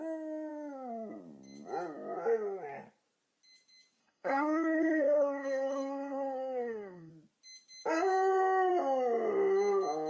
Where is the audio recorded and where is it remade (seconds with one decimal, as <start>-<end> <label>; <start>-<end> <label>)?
0.0-4.0 recorded; 4.0-7.1 remade; 7.1-10.1 recorded